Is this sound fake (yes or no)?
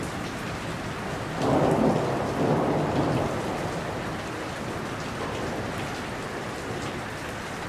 no